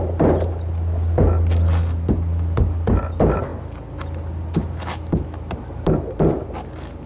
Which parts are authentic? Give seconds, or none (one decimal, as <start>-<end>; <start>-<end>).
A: 0.0-7.1